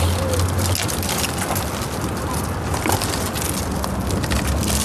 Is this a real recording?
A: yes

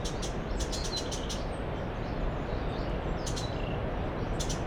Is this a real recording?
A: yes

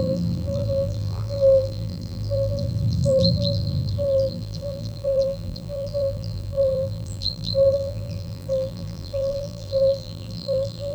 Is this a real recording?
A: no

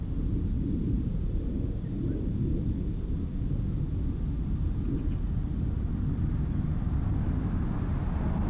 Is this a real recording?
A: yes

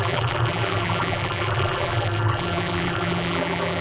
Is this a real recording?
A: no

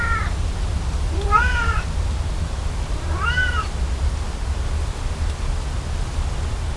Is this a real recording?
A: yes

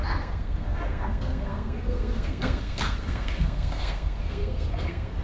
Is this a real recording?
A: no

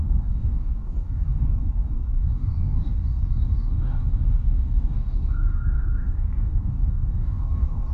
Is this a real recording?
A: no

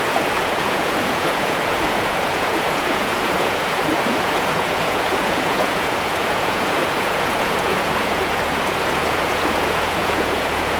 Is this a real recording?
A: no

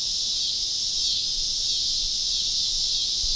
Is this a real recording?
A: yes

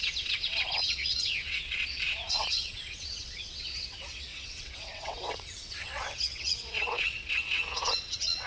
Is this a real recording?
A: no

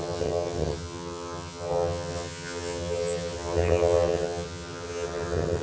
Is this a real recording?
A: no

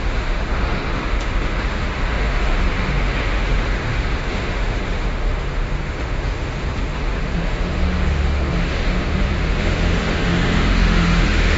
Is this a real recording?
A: no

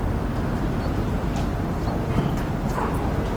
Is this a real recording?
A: yes